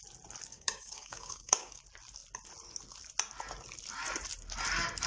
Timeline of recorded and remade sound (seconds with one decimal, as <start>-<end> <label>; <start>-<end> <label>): 0.0-0.5 recorded; 0.5-1.8 remade; 1.8-5.1 recorded